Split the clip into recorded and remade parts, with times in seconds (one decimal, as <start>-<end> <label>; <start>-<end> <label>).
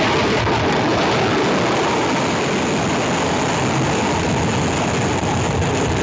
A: 0.0-6.0 recorded